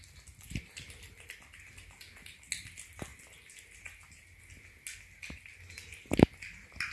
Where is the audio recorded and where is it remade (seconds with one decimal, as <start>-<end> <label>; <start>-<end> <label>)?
0.0-6.9 recorded